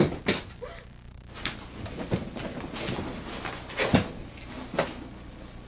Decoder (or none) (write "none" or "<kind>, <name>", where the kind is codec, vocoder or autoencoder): none